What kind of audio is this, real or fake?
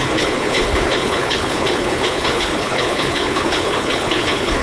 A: fake